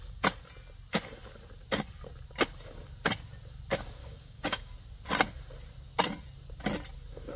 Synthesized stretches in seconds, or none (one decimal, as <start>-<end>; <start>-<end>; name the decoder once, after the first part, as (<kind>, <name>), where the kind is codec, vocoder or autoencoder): 4.0-4.7 (codec, DAC)